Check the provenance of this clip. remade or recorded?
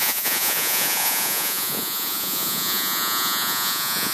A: remade